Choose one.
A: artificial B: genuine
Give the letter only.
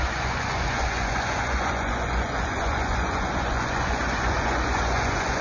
A